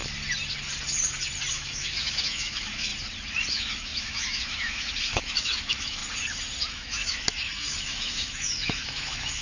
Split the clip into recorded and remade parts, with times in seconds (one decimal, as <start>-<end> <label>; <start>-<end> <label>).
0.0-1.5 recorded; 1.5-2.9 remade; 2.9-3.5 recorded; 3.5-6.0 remade; 6.0-6.7 recorded; 6.7-9.4 remade